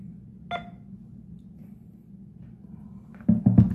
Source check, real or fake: real